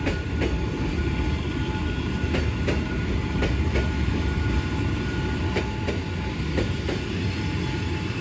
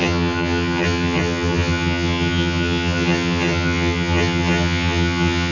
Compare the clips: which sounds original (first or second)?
first